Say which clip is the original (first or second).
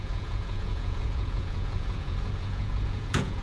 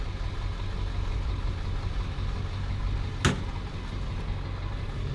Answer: second